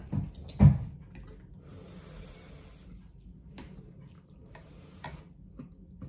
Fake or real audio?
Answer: real